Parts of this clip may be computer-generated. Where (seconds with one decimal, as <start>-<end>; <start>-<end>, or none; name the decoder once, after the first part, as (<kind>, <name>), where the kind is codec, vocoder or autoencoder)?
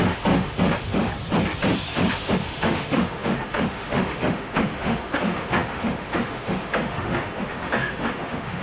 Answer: 0.0-1.1 (autoencoder, DAC-VAE); 2.1-8.6